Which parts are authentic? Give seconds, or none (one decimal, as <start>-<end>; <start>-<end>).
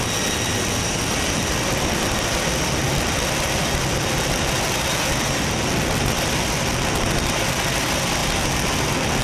0.0-9.2